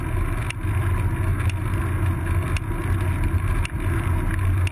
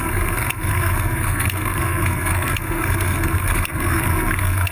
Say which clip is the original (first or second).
first